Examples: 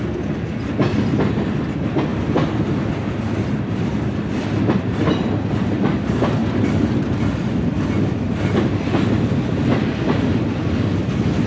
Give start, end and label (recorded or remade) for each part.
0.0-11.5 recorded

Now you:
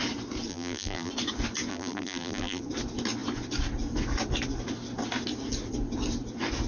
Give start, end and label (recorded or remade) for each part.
0.0-0.5 recorded; 0.5-1.1 remade; 1.1-1.7 recorded; 1.7-2.6 remade; 2.6-6.7 recorded

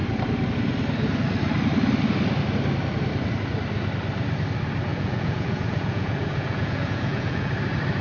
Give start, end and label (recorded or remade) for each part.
0.0-4.9 recorded; 4.9-7.5 remade; 7.5-8.0 recorded

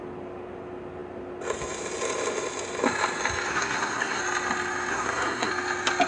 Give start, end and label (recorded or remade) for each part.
0.0-3.5 recorded; 3.5-4.2 remade; 4.2-4.9 recorded; 4.9-5.5 remade; 5.5-6.1 recorded